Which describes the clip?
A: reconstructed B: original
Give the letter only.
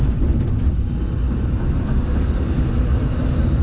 B